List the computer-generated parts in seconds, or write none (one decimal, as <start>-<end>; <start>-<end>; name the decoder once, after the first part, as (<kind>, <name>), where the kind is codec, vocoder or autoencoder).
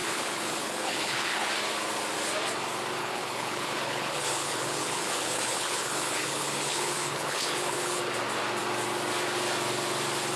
0.0-1.5 (codec, HILCodec); 3.0-8.0